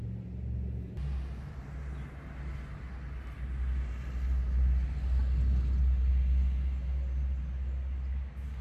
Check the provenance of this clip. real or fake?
real